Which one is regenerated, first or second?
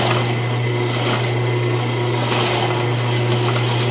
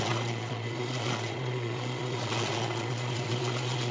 second